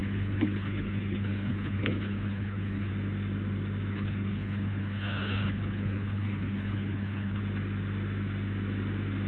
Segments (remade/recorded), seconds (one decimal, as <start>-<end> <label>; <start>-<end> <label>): 0.0-2.9 remade; 2.9-3.9 recorded; 3.9-7.4 remade; 7.4-9.3 recorded